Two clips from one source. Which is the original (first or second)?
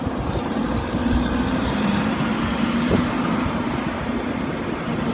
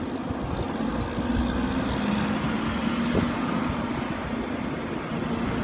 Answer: second